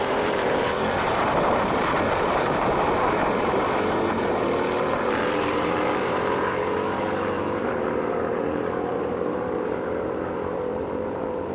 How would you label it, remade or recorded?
remade